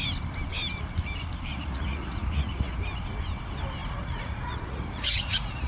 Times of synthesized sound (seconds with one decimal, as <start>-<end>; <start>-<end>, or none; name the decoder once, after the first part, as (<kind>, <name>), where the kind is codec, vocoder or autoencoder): 1.5-2.8 (vocoder, Vocos); 3.8-5.7